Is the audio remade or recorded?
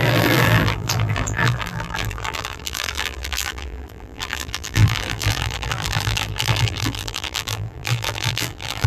remade